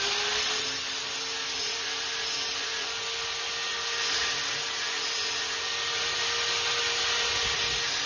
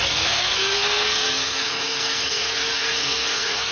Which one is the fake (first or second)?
second